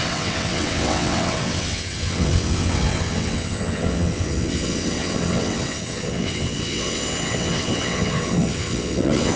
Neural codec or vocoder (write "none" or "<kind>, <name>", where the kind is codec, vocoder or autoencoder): vocoder, WaveNeXt